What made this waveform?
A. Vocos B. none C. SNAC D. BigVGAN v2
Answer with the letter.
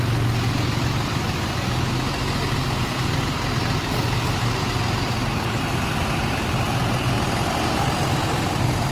B